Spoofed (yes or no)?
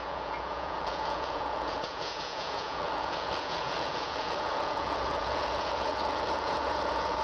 yes